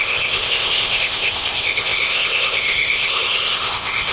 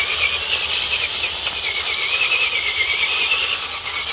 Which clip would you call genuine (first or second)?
second